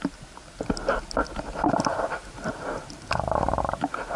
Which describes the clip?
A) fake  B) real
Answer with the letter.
B